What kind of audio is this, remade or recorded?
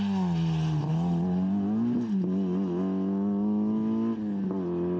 recorded